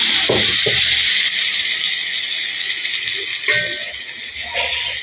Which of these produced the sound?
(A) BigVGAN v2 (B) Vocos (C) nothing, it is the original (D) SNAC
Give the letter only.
C